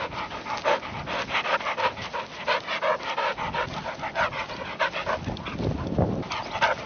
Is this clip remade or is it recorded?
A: recorded